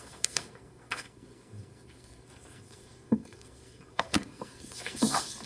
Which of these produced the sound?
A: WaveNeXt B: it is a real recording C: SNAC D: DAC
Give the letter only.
C